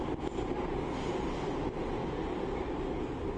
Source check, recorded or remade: recorded